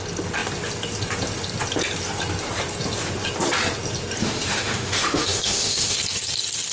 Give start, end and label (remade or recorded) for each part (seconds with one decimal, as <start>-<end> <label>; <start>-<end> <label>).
0.0-4.2 recorded; 4.2-6.0 remade; 6.0-6.7 recorded